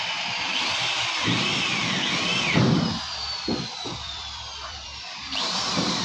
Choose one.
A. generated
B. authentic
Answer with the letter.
A